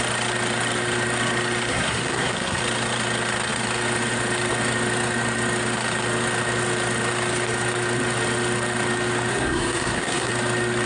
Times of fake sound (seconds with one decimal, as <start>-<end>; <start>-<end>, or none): 1.7-2.6; 9.3-10.3